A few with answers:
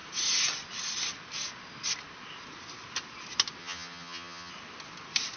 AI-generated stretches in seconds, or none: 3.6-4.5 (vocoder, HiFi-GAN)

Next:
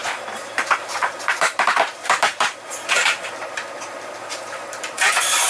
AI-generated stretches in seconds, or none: 0.0-5.5 (vocoder, BigVGAN v2)

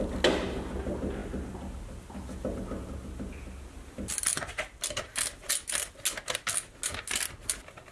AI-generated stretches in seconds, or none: none

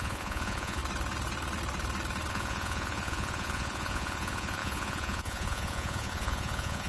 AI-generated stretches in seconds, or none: 0.0-0.8 (vocoder, Vocos); 2.3-6.9

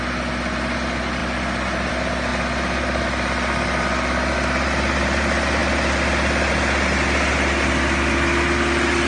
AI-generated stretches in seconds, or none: none

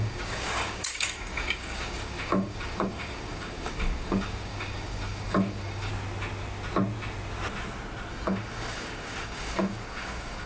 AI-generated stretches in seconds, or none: 0.0-5.9 (codec, DAC); 8.1-10.5

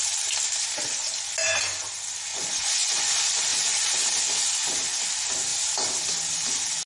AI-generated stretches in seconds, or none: 2.3-3.0 (vocoder, Vocos)